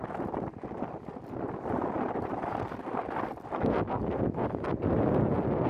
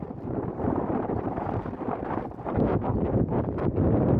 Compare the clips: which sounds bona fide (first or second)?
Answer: first